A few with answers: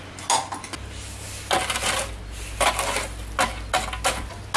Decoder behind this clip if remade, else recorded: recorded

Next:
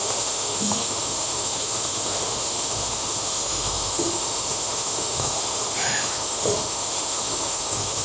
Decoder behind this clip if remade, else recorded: remade, autoencoder, DAC-VAE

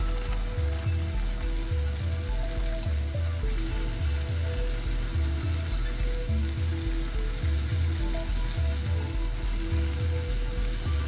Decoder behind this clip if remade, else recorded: recorded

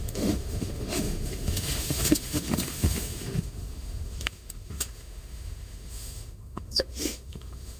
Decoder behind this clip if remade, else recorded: remade, autoencoder, DAC-VAE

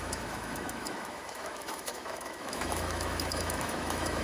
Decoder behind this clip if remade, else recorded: remade, autoencoder, DAC-VAE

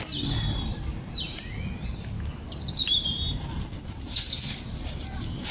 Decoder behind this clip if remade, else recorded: recorded